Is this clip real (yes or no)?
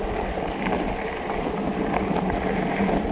yes